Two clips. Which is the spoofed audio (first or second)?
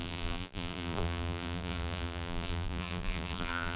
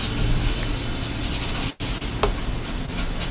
first